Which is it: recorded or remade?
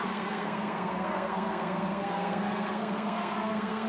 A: remade